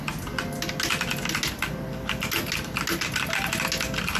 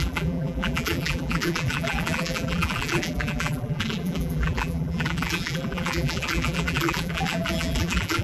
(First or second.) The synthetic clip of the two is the second